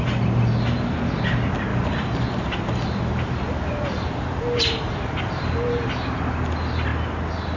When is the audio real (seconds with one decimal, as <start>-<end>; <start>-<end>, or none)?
0.0-1.7; 6.2-7.6